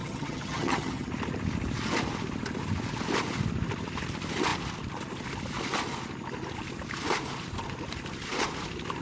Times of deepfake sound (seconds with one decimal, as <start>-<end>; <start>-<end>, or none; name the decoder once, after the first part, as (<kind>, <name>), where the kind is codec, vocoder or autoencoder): 0.0-1.1 (vocoder, HiFi-GAN)